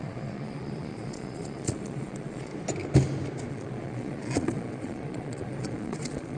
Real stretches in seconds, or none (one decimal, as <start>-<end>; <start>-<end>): 2.5-3.5